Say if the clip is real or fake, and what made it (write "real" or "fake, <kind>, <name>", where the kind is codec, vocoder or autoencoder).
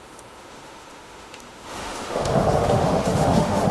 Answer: fake, autoencoder, DAC-VAE